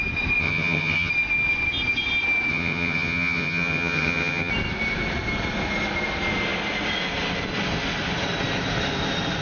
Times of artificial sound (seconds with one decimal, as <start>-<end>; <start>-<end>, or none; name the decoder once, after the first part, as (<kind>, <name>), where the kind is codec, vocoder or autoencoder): 0.4-1.1 (vocoder, HiFi-GAN); 2.5-4.5